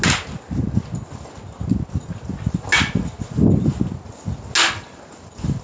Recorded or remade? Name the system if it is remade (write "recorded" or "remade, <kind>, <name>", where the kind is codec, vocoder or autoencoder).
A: recorded